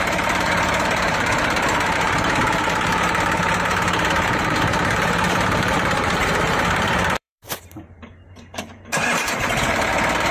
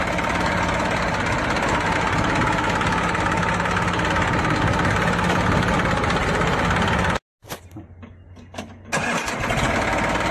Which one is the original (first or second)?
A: second